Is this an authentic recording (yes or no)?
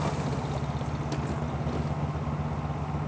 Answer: yes